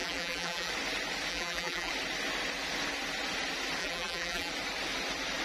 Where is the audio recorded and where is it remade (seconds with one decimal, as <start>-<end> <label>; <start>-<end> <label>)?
0.0-0.7 remade; 0.7-1.3 recorded; 1.3-1.9 remade; 1.9-3.8 recorded; 3.8-4.5 remade; 4.5-5.4 recorded